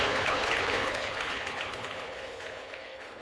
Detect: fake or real fake